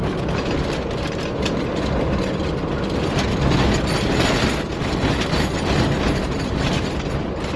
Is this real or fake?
real